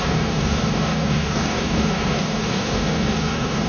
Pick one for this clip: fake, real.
fake